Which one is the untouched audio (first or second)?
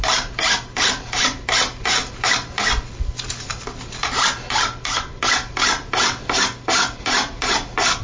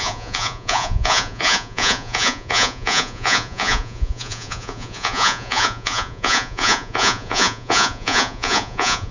first